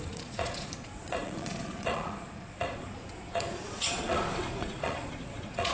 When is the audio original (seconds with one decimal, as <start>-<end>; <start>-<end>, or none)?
none